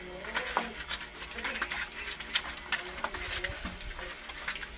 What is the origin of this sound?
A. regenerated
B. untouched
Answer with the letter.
B